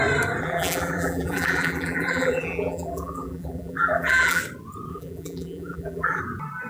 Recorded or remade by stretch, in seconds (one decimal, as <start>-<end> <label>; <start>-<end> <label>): 0.0-0.4 recorded; 0.4-4.4 remade; 4.4-4.9 recorded; 4.9-6.2 remade; 6.2-6.7 recorded